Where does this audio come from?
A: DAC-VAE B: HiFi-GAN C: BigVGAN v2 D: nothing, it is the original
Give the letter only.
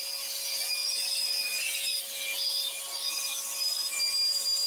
D